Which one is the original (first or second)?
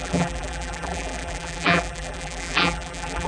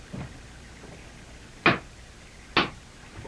second